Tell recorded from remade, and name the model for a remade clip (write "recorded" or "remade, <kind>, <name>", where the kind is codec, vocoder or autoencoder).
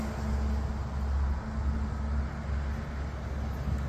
recorded